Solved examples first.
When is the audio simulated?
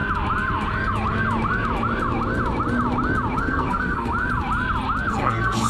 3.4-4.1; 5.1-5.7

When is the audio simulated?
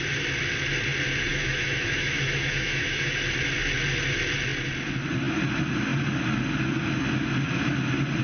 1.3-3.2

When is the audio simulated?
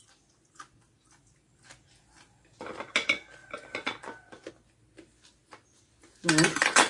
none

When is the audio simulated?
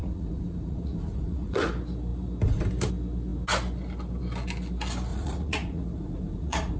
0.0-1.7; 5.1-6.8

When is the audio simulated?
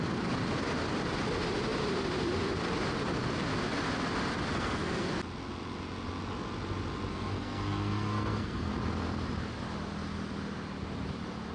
4.5-5.1; 7.1-8.7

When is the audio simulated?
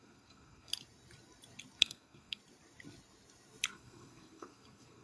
0.0-0.7; 1.8-2.4; 3.7-5.0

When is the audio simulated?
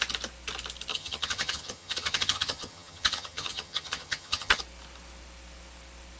0.9-4.6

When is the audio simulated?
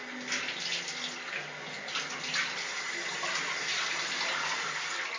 3.7-4.6